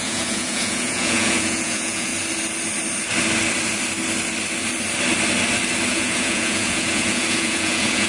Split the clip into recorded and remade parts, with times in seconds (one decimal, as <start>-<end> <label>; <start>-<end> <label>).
0.0-2.1 remade; 2.1-5.9 recorded; 5.9-8.1 remade